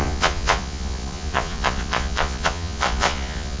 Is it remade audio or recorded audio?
remade